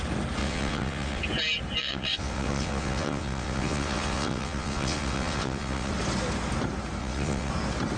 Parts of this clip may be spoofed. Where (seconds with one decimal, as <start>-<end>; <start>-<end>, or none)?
0.4-1.2; 1.8-5.9; 7.0-7.5